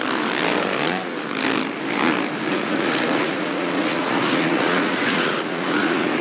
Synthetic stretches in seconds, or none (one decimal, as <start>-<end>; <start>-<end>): 2.5-6.2